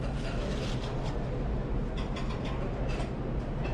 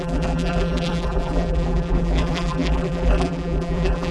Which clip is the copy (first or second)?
second